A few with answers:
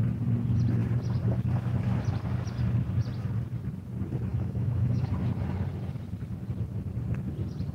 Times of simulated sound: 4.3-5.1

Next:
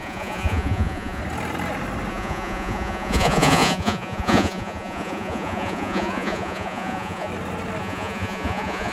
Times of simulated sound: 0.0-1.2; 2.1-7.3; 7.8-8.9

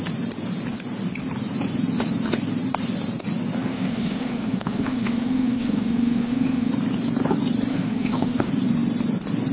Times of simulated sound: 3.6-6.7; 7.7-8.5

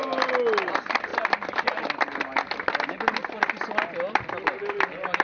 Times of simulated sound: none

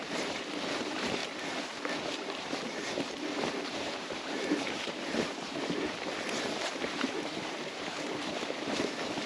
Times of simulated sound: 0.0-1.2; 3.7-9.3

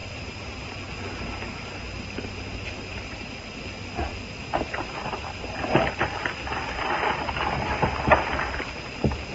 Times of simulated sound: 4.1-5.9

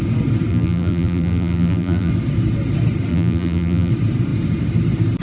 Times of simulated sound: 0.5-2.1; 3.1-3.9

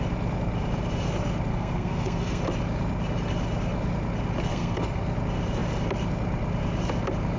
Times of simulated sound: 1.5-2.4; 4.5-5.0